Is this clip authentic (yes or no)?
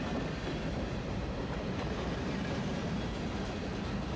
no